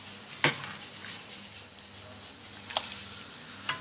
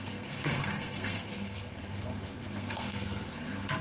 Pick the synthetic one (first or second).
second